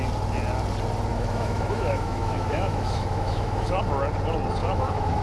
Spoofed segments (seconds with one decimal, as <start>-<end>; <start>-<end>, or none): 1.1-3.8; 4.6-5.2